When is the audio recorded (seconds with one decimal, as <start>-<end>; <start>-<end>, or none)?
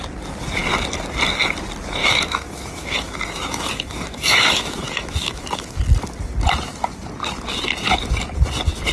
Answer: 0.0-2.0; 5.8-8.9